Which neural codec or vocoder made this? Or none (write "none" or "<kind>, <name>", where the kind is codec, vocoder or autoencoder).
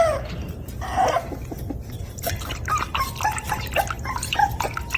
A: none